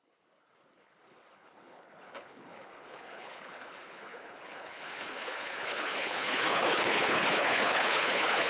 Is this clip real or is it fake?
fake